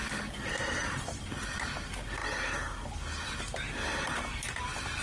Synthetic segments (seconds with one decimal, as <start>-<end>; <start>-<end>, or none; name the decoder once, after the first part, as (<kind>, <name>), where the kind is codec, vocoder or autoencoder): 0.0-0.5 (vocoder, BigVGAN v2)